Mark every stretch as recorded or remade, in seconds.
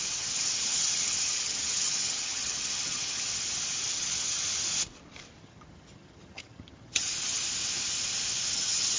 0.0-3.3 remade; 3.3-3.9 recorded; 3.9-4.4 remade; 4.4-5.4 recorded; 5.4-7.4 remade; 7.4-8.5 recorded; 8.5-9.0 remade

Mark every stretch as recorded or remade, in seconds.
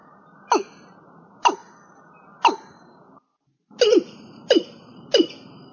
0.0-5.7 recorded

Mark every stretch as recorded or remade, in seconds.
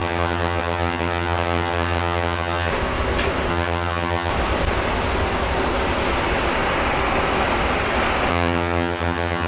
0.0-2.7 remade; 2.7-3.5 recorded; 3.5-4.3 remade; 4.3-8.3 recorded; 8.3-9.5 remade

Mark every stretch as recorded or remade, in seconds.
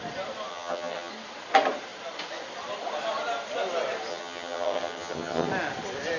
0.0-0.5 recorded; 0.5-1.1 remade; 1.1-4.1 recorded; 4.1-5.5 remade; 5.5-6.2 recorded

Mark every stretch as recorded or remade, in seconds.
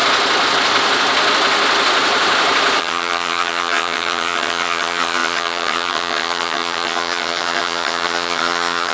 0.0-2.8 recorded; 2.8-8.9 remade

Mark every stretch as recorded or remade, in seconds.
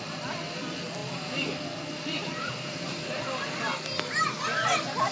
0.0-5.1 recorded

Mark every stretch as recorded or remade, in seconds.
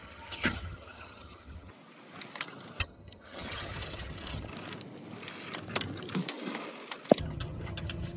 0.0-1.7 remade; 1.7-2.8 recorded; 2.8-4.5 remade; 4.5-7.2 recorded; 7.2-8.2 remade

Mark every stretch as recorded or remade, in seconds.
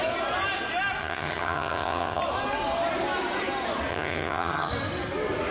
0.0-1.0 recorded; 1.0-2.2 remade; 2.2-3.9 recorded; 3.9-4.7 remade; 4.7-5.5 recorded